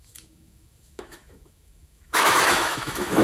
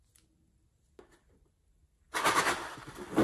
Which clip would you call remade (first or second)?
first